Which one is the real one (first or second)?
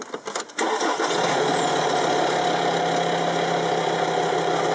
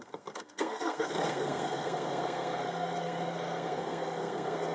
first